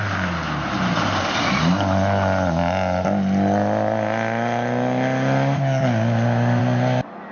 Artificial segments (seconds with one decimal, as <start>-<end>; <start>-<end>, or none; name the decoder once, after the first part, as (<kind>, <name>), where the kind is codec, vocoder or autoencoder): none